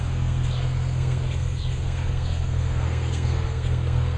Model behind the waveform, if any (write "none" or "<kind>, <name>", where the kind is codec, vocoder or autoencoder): codec, SNAC